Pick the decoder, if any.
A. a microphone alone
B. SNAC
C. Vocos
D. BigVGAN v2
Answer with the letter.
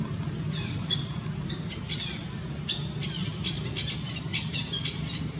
A